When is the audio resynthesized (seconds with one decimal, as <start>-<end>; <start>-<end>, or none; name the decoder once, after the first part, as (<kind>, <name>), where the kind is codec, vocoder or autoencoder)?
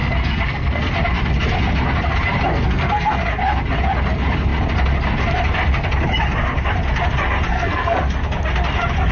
0.0-0.9 (codec, SNAC); 2.5-3.2; 7.5-8.0